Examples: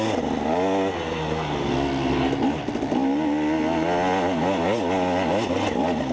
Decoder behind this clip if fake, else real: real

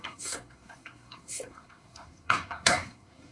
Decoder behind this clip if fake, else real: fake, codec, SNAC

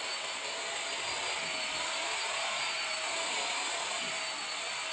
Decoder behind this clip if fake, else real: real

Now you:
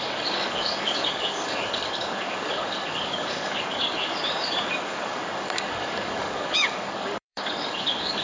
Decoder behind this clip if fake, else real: fake, codec, DAC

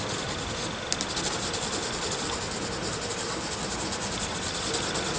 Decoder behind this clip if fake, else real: real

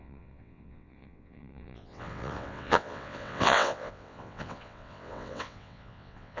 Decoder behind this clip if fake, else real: fake, vocoder, WaveNeXt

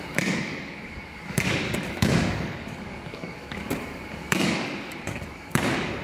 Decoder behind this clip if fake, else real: fake, codec, DAC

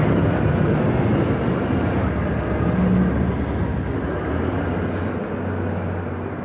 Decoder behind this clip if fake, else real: real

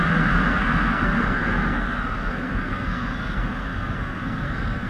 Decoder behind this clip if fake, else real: fake, codec, SNAC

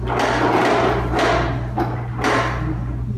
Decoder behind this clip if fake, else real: real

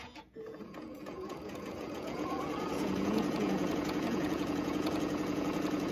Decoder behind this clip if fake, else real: fake, vocoder, Vocos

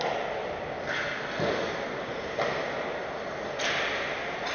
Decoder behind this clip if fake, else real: real